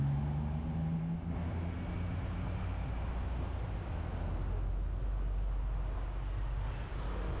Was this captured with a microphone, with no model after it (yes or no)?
yes